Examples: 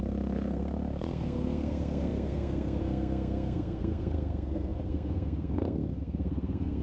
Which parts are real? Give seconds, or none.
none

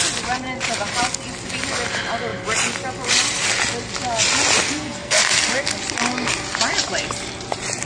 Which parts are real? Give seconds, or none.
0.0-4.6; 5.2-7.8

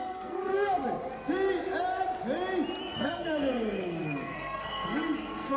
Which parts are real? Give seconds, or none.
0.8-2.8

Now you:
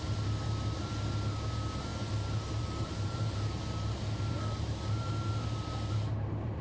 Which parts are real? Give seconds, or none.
0.0-1.9; 5.1-6.6

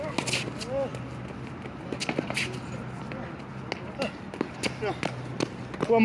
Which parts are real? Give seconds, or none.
0.0-6.0

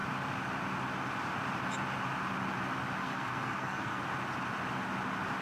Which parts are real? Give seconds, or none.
0.0-3.0; 4.0-5.4

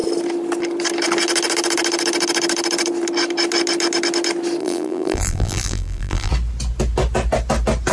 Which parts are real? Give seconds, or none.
0.0-4.6; 6.3-7.9

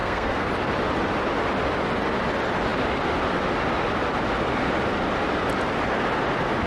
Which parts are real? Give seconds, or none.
0.5-6.7